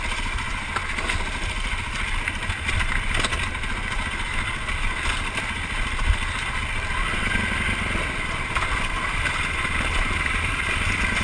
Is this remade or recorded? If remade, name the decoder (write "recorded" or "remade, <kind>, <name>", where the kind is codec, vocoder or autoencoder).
recorded